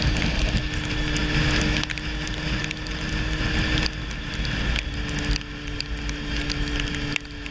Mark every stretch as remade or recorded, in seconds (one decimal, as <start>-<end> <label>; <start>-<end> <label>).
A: 0.0-7.5 recorded